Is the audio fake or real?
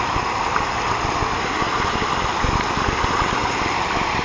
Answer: real